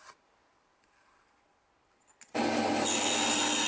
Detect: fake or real real